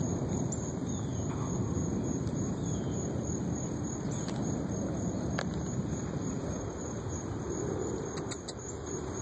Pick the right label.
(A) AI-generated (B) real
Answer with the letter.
B